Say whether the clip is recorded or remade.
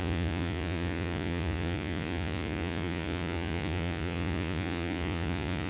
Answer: remade